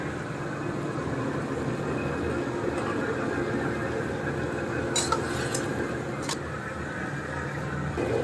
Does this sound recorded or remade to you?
recorded